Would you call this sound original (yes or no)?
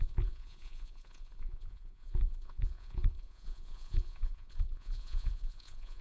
no